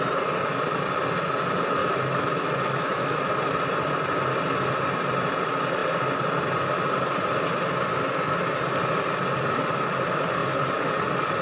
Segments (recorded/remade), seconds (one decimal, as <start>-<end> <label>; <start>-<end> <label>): 0.0-1.8 recorded; 1.8-3.2 remade; 3.2-11.4 recorded